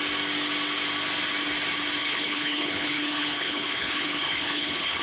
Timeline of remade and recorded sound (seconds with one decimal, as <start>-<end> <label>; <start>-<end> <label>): 0.0-2.0 recorded; 2.0-5.0 remade